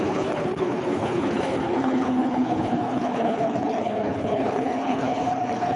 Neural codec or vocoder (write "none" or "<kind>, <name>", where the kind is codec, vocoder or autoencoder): codec, HILCodec